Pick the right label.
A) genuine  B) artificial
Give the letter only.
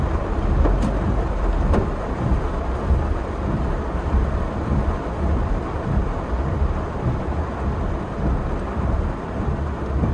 B